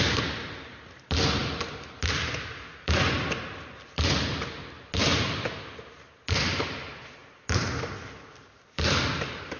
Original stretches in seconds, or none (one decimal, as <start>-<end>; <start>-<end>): 0.0-9.6

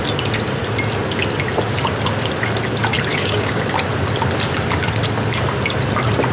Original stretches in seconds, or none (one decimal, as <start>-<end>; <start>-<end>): 0.0-3.1; 3.6-6.3

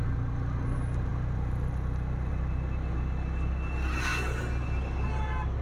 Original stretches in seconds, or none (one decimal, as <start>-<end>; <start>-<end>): 0.0-5.6

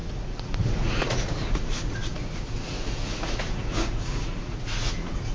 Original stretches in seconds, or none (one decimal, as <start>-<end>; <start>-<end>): none